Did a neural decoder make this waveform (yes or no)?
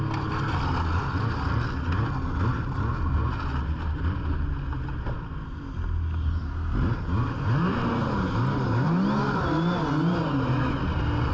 no